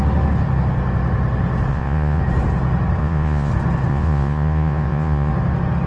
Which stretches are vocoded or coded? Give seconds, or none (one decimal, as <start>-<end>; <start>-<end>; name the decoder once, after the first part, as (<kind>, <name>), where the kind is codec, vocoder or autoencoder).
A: 1.7-2.2 (vocoder, Vocos); 3.0-3.5; 3.9-5.3